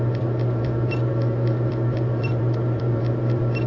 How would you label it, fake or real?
real